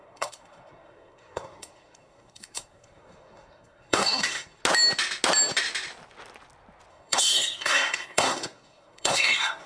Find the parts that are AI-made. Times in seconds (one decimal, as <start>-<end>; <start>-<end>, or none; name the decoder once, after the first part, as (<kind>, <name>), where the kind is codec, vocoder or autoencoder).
0.0-4.6 (codec, SNAC); 6.9-9.7